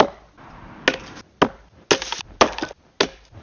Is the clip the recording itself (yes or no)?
yes